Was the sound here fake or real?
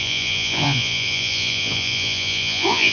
fake